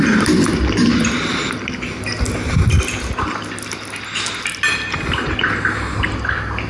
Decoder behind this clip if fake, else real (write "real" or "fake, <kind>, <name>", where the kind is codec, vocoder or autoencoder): real